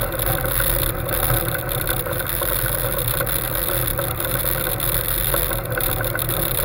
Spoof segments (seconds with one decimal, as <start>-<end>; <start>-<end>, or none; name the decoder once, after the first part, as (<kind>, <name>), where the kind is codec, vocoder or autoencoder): none